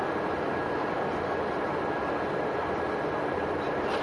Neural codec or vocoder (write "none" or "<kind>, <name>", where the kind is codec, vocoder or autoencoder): none